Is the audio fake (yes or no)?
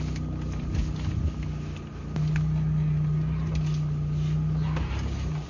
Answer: no